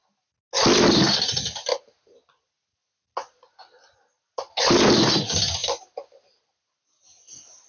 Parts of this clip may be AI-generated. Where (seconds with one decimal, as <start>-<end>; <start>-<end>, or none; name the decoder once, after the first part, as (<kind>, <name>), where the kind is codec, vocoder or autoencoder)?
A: 5.6-6.5 (vocoder, BigVGAN v2)